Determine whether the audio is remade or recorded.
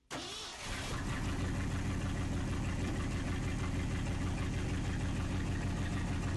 recorded